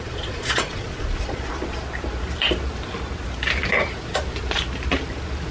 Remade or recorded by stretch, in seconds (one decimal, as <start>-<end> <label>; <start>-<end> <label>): 0.0-1.5 remade; 1.5-5.5 recorded